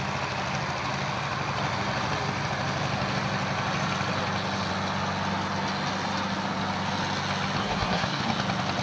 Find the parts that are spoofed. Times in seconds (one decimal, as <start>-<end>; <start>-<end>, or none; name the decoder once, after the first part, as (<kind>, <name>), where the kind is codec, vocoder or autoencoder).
7.6-8.2 (codec, SNAC)